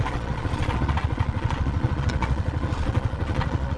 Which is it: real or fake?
fake